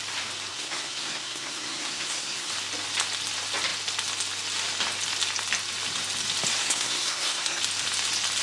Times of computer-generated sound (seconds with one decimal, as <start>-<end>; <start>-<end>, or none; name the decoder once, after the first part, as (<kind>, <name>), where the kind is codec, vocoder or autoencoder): 0.5-2.5 (codec, SNAC); 6.6-7.6